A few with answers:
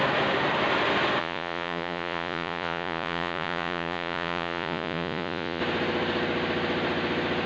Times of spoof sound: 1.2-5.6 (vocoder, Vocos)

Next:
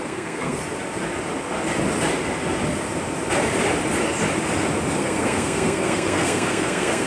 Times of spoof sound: 0.0-0.6 (codec, SNAC); 4.9-7.1

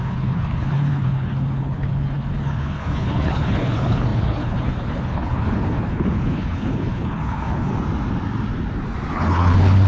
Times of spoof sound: 0.0-7.7 (codec, HILCodec); 9.1-9.9

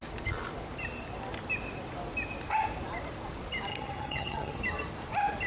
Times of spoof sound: 3.7-4.6 (vocoder, HiFi-GAN)

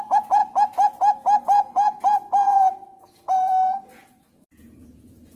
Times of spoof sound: 0.0-0.4 (vocoder, Vocos); 1.4-5.4